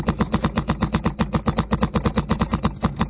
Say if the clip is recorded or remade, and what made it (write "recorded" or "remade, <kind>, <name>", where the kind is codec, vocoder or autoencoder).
recorded